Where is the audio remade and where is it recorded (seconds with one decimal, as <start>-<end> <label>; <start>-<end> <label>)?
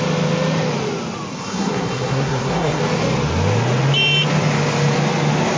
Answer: 0.0-1.3 recorded; 1.3-2.8 remade; 2.8-5.6 recorded